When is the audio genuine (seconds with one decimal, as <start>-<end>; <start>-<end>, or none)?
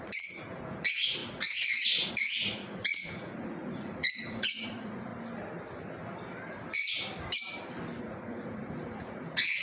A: 5.1-8.0